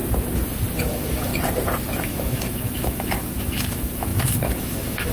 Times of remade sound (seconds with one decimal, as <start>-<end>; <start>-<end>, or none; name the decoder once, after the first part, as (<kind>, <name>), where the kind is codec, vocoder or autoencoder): 0.8-1.3 (autoencoder, DAC-VAE); 2.0-5.1